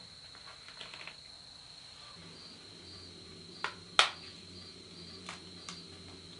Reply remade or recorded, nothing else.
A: recorded